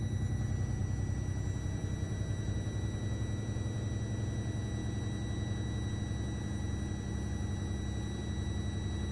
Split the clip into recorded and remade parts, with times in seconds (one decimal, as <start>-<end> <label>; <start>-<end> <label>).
0.0-9.1 recorded